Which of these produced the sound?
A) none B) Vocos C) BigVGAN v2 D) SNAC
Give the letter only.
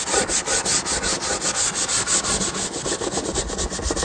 A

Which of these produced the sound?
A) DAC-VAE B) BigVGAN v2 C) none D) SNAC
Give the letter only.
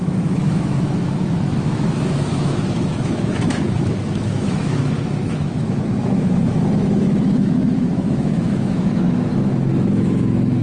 A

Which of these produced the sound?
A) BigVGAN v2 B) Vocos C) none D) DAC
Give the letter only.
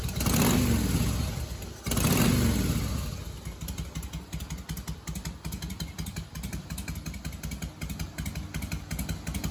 C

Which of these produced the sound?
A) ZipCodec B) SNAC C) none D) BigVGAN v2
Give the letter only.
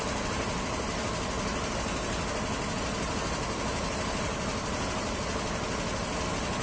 C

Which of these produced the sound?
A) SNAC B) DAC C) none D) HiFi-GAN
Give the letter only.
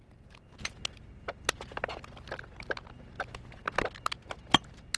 C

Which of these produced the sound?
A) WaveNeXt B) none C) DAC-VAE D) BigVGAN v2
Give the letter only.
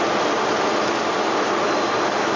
B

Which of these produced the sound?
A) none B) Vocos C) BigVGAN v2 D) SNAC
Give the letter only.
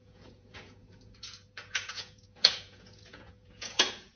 B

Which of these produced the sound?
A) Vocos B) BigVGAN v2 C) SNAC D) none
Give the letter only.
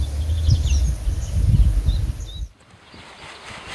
D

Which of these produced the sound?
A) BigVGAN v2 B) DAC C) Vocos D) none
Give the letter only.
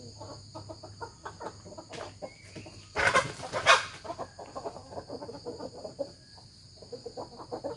D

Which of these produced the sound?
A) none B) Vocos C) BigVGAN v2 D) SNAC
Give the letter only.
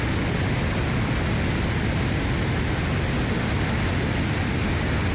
A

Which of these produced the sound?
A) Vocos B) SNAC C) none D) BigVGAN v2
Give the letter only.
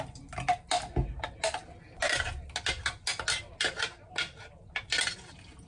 C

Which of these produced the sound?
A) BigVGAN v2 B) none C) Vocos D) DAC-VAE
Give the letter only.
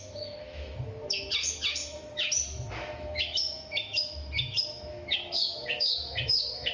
D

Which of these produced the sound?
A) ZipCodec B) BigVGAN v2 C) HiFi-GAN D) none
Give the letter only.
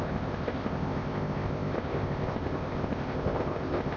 A